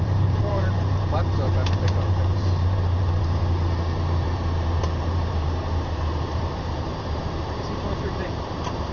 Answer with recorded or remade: remade